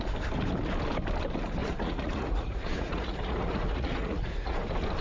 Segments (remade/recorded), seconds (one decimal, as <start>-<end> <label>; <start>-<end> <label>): 0.0-1.6 recorded; 1.6-4.6 remade; 4.6-5.0 recorded